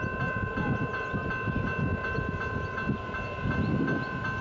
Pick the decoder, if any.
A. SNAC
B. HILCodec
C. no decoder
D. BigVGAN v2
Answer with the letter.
C